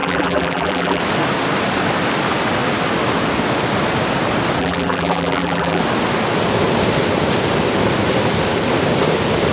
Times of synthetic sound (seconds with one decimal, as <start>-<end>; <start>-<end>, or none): 0.0-1.0; 4.6-5.8